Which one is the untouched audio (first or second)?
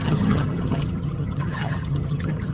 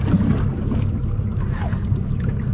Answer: second